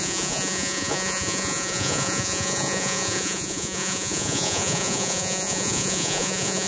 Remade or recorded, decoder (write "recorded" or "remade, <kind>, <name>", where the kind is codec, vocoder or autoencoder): remade, vocoder, Vocos